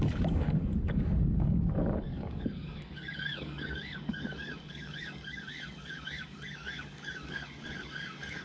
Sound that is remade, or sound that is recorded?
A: remade